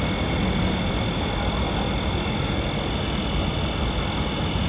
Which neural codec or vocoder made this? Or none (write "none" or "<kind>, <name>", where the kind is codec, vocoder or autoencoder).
none